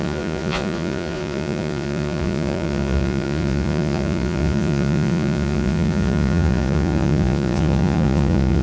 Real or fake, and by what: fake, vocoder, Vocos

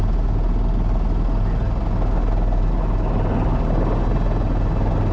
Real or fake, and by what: real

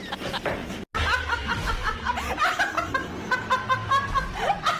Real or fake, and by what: real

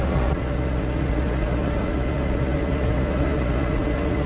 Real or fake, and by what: fake, vocoder, Vocos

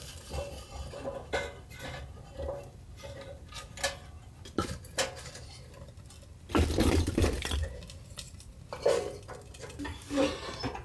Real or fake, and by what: real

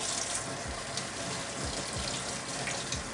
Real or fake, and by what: real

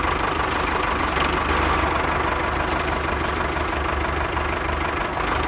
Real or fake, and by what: real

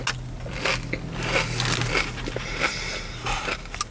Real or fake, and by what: real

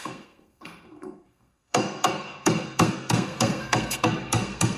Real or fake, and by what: fake, codec, SNAC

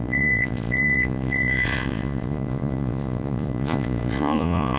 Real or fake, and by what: fake, vocoder, Vocos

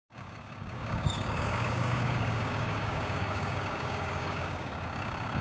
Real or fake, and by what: fake, codec, DAC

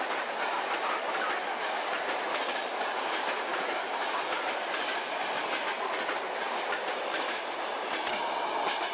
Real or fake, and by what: real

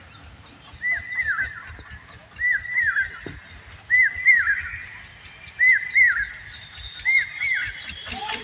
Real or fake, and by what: real